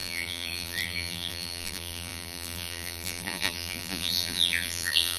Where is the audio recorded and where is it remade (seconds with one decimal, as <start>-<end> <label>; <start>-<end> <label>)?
0.0-5.2 remade